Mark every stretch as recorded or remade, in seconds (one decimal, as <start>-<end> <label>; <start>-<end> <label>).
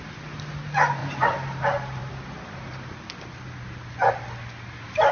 0.0-1.0 recorded; 1.0-2.1 remade; 2.1-5.1 recorded